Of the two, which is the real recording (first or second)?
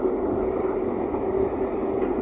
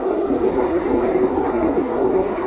first